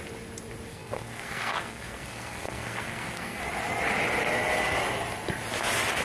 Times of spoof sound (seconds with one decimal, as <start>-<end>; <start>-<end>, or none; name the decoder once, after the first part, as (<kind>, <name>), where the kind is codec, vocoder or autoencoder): 0.7-3.4 (codec, SNAC)